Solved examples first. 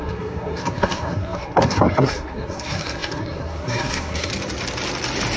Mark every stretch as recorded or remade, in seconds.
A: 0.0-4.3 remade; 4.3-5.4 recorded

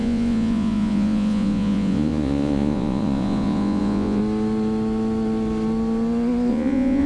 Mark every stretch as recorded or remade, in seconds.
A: 0.0-4.2 remade; 4.2-6.5 recorded; 6.5-7.1 remade

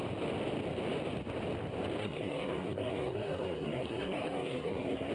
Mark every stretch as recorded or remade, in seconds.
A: 0.0-2.0 recorded; 2.0-5.1 remade

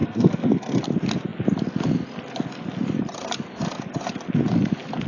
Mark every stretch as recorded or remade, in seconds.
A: 0.0-0.8 remade; 0.8-5.1 recorded

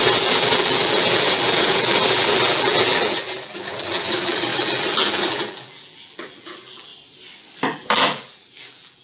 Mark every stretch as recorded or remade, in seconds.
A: 0.0-6.9 remade; 6.9-7.7 recorded; 7.7-9.0 remade

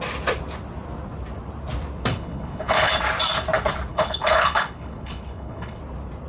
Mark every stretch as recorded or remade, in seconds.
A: 0.0-2.1 recorded; 2.1-2.9 remade; 2.9-3.9 recorded; 3.9-5.8 remade; 5.8-6.3 recorded